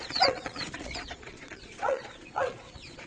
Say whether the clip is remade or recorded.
remade